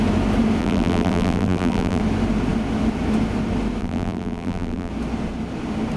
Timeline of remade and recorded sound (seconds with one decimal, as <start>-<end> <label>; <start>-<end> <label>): 0.0-0.6 recorded; 0.6-2.0 remade; 2.0-3.8 recorded; 3.8-4.9 remade; 4.9-6.0 recorded